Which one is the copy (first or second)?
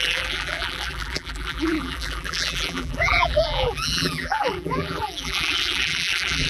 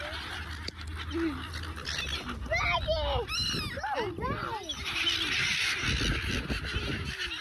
first